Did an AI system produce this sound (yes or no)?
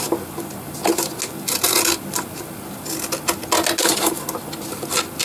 no